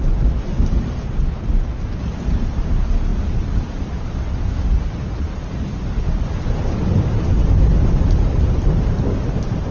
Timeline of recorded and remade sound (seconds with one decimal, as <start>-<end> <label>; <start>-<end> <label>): 0.0-9.7 recorded